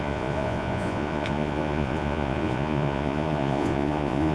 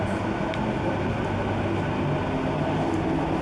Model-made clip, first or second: first